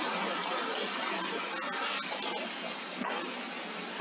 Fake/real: real